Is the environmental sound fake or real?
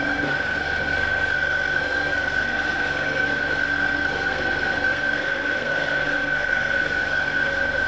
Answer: fake